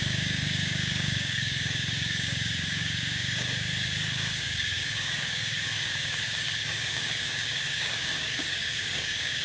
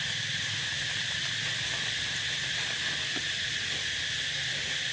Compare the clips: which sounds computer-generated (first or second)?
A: first